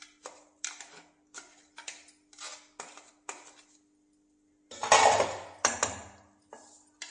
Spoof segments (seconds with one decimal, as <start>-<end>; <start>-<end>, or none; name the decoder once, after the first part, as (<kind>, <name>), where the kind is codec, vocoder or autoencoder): none